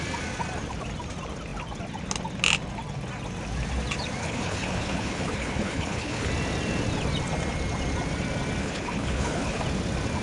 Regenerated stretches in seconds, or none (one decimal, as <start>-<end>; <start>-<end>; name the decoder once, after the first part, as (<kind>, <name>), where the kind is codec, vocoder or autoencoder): 4.2-6.3 (codec, HILCodec); 8.6-9.6